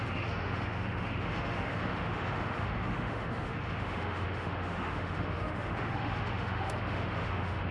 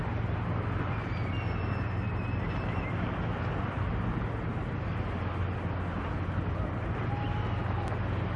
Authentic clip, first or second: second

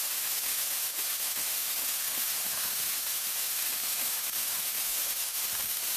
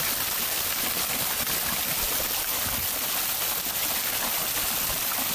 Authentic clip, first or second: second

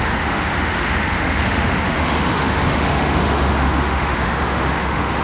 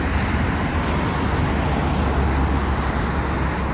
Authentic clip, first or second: second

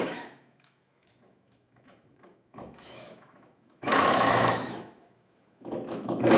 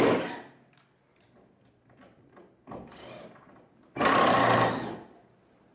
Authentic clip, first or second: second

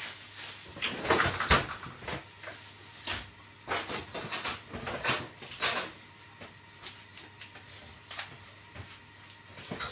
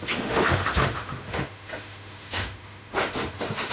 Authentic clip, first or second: first